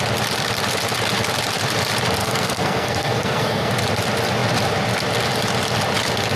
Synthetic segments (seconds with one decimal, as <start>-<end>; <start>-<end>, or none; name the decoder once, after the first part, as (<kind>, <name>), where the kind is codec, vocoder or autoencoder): 2.2-3.7 (codec, SNAC)